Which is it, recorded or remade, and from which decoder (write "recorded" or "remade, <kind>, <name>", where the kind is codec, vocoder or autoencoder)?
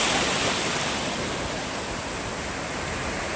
recorded